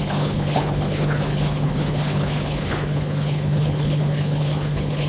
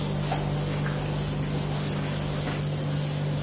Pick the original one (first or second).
second